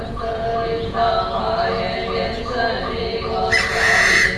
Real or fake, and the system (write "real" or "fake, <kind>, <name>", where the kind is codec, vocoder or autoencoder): fake, vocoder, Vocos